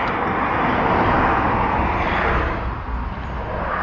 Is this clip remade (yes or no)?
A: no